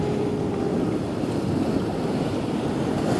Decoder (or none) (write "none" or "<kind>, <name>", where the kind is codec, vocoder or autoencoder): none